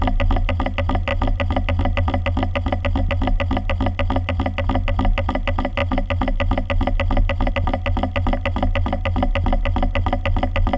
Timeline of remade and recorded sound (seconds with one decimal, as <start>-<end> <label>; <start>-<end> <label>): 0.0-10.8 recorded